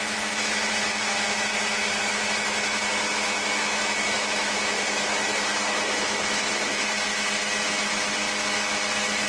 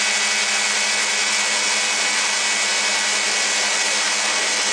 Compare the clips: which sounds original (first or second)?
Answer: second